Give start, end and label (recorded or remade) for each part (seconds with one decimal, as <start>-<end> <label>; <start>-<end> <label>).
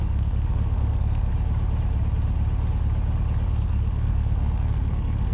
0.0-1.3 remade; 1.3-3.5 recorded; 3.5-5.3 remade